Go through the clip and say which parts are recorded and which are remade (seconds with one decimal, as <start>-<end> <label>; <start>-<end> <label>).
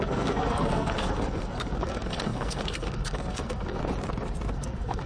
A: 0.0-3.8 remade; 3.8-4.5 recorded; 4.5-5.1 remade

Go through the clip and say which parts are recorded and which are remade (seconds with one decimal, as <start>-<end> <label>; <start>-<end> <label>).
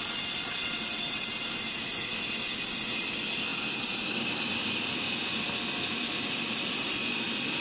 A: 0.0-0.6 recorded; 0.6-1.3 remade; 1.3-7.6 recorded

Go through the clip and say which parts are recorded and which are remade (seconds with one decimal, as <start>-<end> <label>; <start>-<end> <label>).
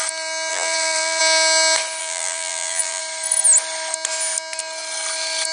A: 0.0-0.5 recorded; 0.5-1.2 remade; 1.2-2.0 recorded; 2.0-3.0 remade; 3.0-5.5 recorded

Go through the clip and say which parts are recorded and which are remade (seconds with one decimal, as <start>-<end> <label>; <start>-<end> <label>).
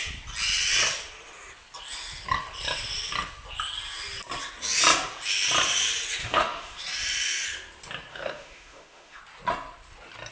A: 0.0-6.2 recorded; 6.2-6.8 remade; 6.8-8.1 recorded; 8.1-9.2 remade; 9.2-10.3 recorded